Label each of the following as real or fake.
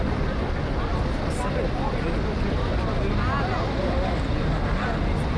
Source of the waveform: real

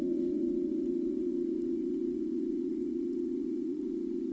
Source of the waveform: fake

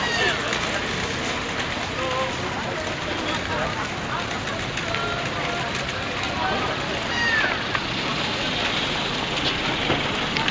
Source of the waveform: real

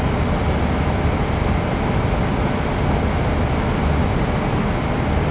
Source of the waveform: real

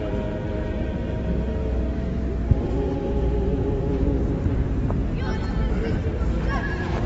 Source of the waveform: real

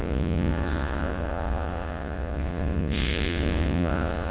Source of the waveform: fake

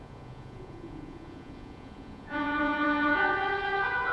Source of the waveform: fake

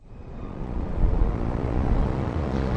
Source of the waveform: fake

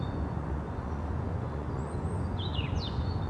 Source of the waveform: fake